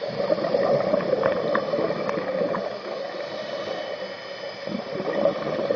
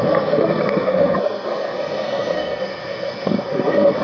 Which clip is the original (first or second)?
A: first